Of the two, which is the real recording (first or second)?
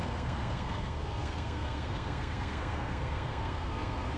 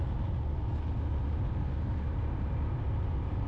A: second